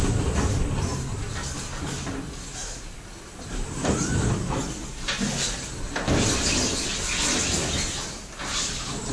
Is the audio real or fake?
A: real